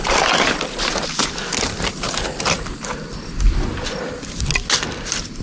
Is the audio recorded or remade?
recorded